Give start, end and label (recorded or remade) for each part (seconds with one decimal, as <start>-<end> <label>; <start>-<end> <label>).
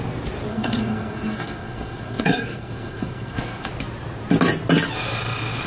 0.0-0.5 recorded; 0.5-3.7 remade; 3.7-5.7 recorded